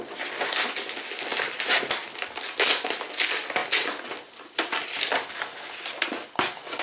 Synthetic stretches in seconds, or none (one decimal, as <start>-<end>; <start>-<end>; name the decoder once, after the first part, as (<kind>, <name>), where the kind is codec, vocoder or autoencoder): none